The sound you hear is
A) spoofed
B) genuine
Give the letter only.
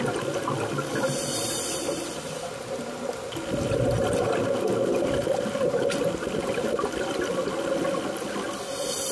B